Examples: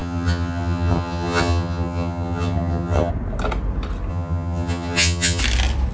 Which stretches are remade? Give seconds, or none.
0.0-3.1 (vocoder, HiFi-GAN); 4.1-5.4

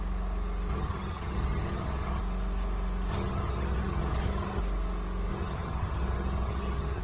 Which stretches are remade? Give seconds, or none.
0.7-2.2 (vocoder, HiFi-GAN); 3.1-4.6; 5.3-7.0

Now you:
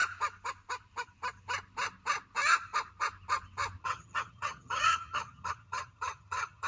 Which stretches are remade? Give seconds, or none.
3.8-6.7 (vocoder, HiFi-GAN)

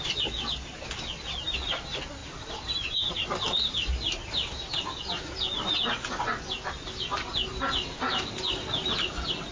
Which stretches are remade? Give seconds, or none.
none

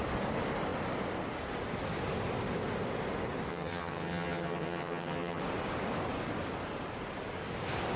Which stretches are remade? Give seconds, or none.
3.5-5.4 (vocoder, HiFi-GAN)

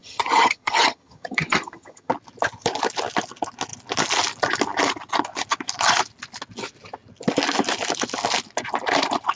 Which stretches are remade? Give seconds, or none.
0.0-2.1 (vocoder, HiFi-GAN)

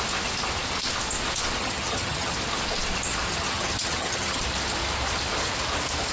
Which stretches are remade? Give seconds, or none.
1.6-2.3 (vocoder, HiFi-GAN); 3.3-4.4